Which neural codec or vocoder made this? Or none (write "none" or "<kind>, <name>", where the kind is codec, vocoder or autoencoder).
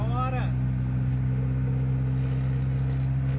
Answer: none